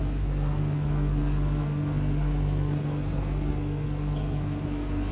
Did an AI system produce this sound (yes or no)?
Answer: yes